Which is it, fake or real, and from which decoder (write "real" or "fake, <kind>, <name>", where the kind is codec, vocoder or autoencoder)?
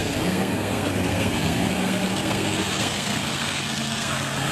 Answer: fake, codec, SNAC